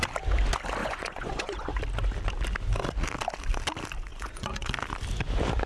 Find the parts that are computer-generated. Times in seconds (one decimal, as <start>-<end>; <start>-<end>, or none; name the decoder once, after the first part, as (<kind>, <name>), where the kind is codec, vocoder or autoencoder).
0.8-1.8 (vocoder, Vocos); 4.1-4.7